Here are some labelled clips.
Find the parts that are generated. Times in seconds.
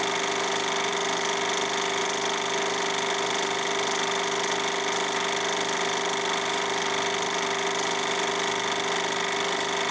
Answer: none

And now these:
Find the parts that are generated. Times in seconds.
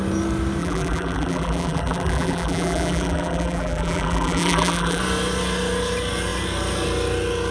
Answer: 0.6-5.0 (vocoder, BigVGAN v2)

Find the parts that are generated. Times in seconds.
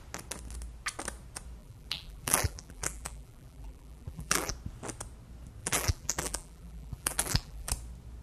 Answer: 1.6-4.5 (vocoder, BigVGAN v2); 5.6-7.7